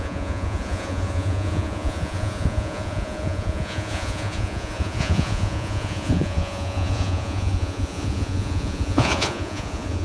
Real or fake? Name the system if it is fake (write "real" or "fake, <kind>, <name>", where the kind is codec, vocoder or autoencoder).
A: fake, vocoder, Vocos